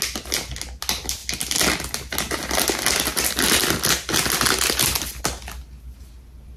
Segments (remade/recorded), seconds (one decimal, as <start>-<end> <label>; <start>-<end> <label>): 0.0-6.6 recorded